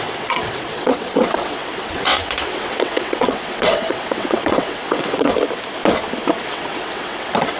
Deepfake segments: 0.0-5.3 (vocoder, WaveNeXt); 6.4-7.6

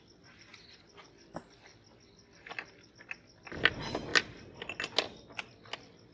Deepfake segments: none

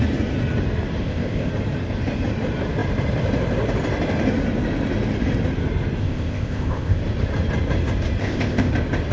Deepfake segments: 1.0-1.5 (codec, ZipCodec); 6.0-7.0; 8.2-8.7